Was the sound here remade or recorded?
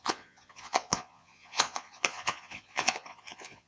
remade